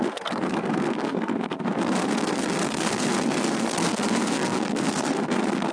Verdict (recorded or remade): remade